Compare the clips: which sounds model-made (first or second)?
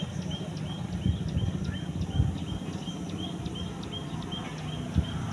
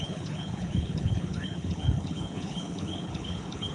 second